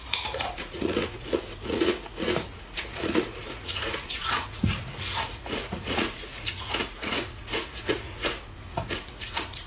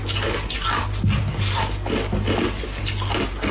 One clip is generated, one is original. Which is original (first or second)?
second